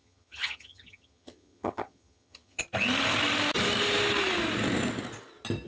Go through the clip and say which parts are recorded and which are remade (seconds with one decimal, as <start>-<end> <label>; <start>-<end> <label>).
0.0-2.6 remade; 2.6-5.7 recorded